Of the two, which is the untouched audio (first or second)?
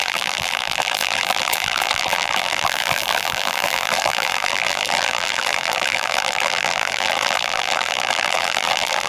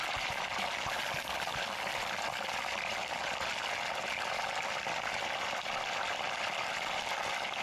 second